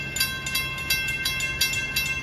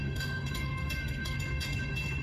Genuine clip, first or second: first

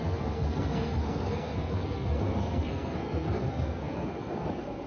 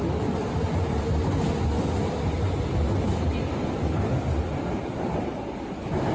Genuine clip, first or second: second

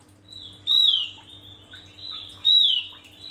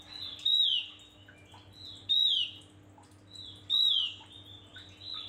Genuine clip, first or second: second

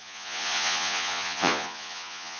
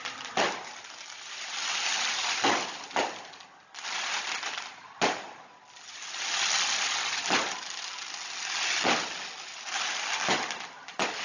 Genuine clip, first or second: second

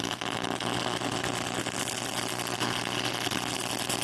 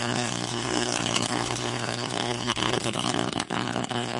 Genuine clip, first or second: first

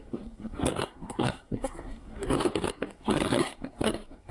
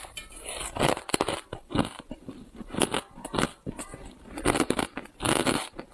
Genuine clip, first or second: second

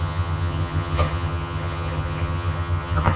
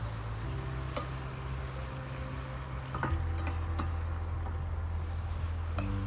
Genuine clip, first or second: second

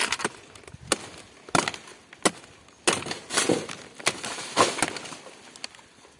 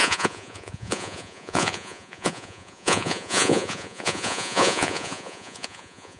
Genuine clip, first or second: first